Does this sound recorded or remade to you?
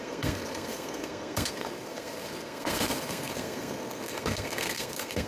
remade